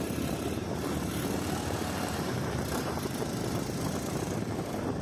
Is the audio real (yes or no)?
no